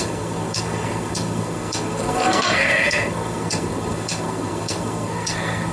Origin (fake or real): fake